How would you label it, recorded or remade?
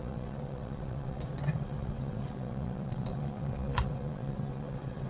remade